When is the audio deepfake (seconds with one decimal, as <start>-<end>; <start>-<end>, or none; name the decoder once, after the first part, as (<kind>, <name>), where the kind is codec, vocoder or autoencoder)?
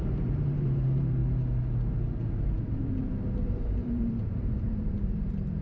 0.0-1.2 (vocoder, BigVGAN v2); 2.3-5.6